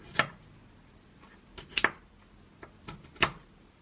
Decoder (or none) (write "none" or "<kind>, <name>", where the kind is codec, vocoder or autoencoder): none